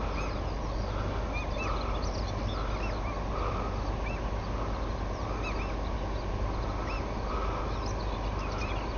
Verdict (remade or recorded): recorded